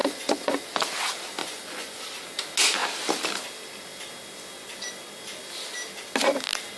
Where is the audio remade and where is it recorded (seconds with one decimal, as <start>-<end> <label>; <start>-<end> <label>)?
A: 0.0-0.8 remade; 0.8-1.4 recorded; 1.4-2.0 remade; 2.0-6.8 recorded